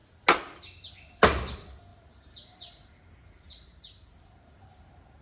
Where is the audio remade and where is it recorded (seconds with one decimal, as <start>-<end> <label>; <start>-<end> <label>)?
0.0-1.9 recorded; 1.9-5.2 remade